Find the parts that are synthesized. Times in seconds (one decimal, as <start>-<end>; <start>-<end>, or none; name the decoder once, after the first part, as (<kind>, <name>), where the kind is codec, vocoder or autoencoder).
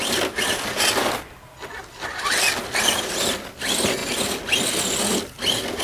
none